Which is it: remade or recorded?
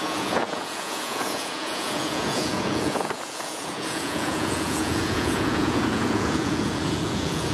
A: remade